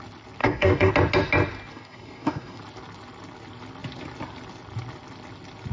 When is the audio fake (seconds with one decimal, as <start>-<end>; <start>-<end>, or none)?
0.4-0.9; 1.7-2.6